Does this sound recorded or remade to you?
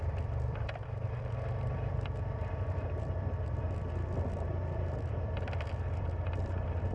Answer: remade